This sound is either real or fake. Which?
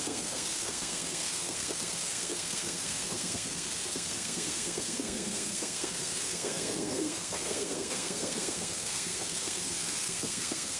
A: fake